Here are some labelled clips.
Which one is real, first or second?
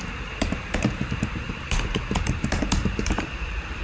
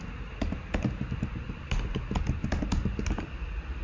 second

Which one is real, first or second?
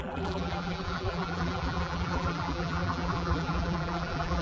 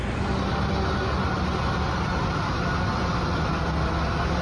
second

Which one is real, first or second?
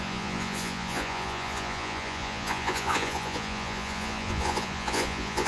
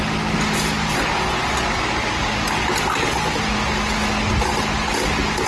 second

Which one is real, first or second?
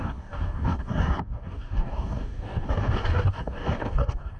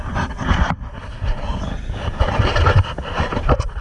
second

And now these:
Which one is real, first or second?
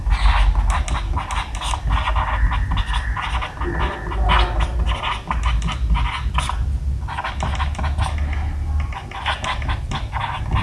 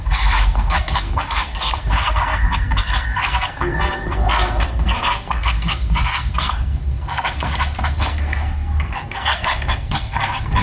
first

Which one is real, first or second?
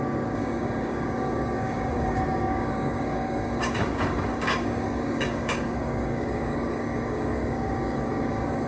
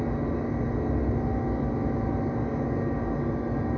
second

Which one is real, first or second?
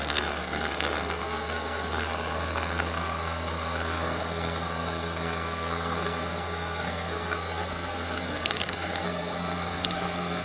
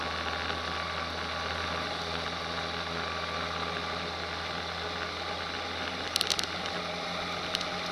second